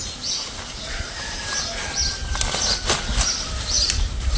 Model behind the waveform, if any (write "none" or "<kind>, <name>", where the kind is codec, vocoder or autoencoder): none